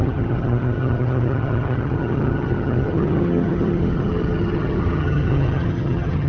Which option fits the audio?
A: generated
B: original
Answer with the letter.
A